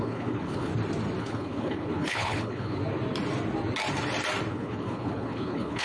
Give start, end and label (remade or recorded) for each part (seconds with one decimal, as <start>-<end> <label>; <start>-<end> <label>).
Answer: 0.0-0.7 remade; 0.7-1.2 recorded; 1.2-2.8 remade; 2.8-4.5 recorded; 4.5-5.8 remade